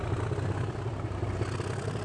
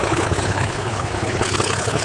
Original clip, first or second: first